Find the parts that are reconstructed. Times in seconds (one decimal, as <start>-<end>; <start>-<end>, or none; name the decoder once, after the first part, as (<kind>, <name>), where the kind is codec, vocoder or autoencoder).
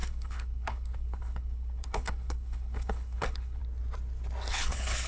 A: 0.0-3.6 (codec, HILCodec); 4.5-5.1